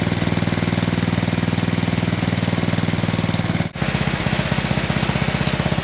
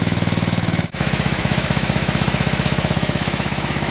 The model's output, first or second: second